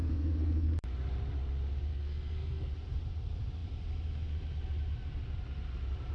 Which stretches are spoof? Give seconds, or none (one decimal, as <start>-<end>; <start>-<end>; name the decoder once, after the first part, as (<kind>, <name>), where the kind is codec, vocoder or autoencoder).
0.0-0.7 (codec, SNAC); 1.9-2.7